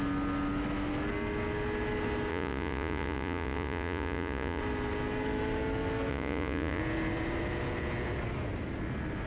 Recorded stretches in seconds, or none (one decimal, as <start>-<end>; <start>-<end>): 0.0-2.3; 4.6-6.1; 6.8-9.3